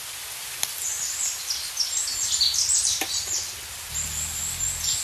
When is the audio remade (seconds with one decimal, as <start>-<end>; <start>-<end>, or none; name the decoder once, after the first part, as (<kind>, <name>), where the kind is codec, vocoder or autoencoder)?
none